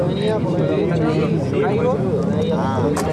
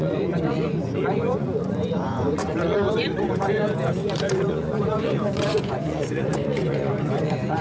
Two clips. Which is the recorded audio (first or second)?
first